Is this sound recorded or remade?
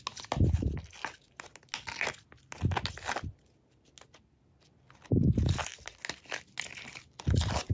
recorded